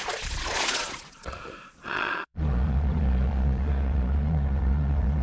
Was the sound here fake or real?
fake